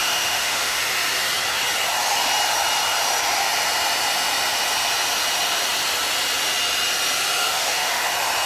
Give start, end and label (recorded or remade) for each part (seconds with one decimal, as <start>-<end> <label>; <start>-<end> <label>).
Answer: 0.0-0.8 remade; 0.8-7.4 recorded; 7.4-8.0 remade; 8.0-8.5 recorded

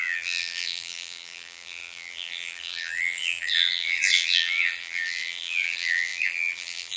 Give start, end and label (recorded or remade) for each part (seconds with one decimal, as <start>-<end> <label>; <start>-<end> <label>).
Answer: 0.0-7.0 remade

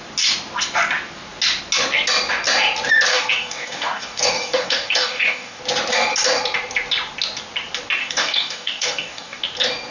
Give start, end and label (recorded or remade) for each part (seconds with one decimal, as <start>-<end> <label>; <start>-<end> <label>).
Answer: 0.0-3.1 recorded; 3.1-5.6 remade; 5.6-8.0 recorded; 8.0-9.4 remade; 9.4-9.9 recorded

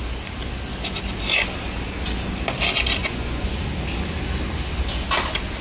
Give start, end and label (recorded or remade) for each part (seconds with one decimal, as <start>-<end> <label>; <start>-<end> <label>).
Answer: 0.0-3.0 recorded; 3.0-3.6 remade; 3.6-5.6 recorded